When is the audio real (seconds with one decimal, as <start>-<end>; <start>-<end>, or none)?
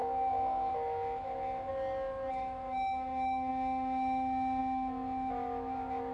1.7-2.3